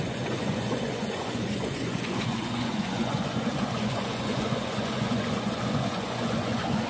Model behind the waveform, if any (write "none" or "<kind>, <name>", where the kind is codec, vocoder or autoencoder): vocoder, Vocos